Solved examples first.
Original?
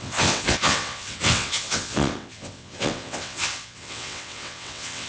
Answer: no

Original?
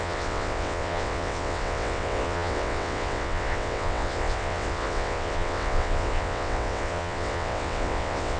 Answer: no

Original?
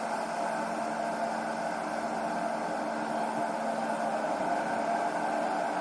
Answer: yes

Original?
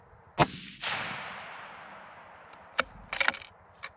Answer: yes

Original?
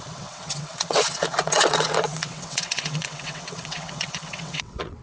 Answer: no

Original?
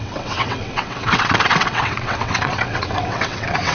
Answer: no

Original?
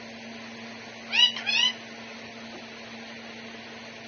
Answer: yes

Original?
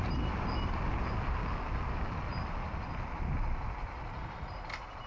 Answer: yes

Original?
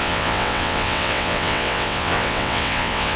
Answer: no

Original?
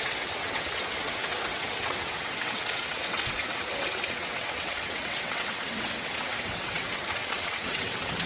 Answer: no